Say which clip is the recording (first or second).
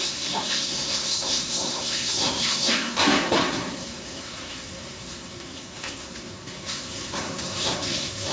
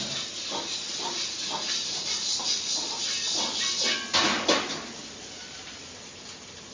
second